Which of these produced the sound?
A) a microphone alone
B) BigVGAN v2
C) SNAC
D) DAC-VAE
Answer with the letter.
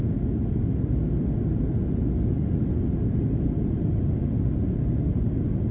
A